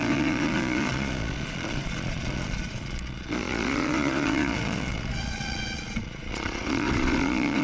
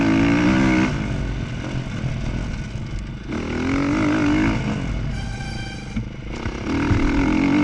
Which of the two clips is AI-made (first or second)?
first